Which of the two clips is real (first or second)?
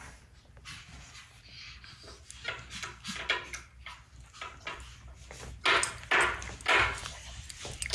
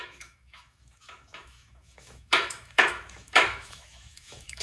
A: first